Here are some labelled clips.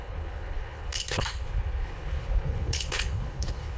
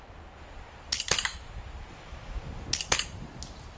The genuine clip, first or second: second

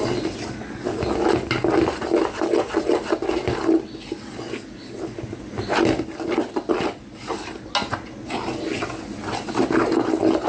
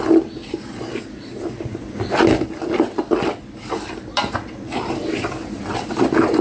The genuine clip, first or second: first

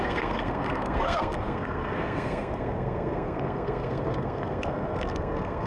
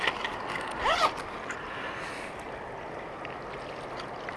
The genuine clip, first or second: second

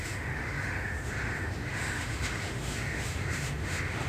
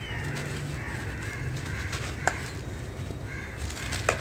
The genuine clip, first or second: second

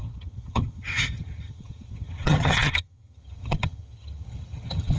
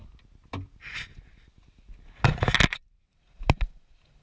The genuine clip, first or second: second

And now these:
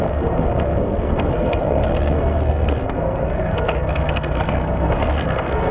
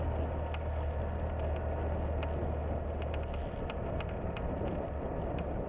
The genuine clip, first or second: second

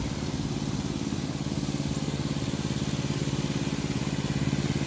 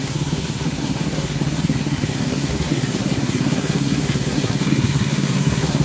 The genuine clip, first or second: first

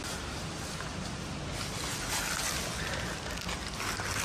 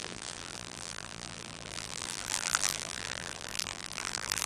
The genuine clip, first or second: first